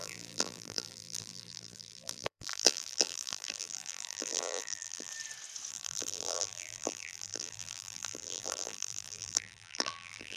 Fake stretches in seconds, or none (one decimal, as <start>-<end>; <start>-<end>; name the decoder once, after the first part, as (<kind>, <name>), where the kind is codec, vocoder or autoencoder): 0.0-5.1 (vocoder, BigVGAN v2); 5.7-10.4